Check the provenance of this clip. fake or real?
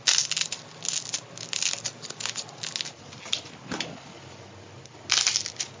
real